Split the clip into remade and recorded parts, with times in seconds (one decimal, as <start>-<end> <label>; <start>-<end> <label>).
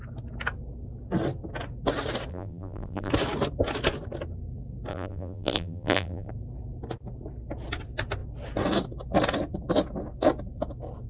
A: 0.0-2.3 recorded; 2.3-3.1 remade; 3.1-4.9 recorded; 4.9-6.3 remade; 6.3-11.1 recorded